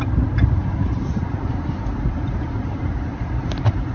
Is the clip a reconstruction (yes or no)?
yes